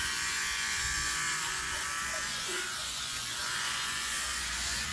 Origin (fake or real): fake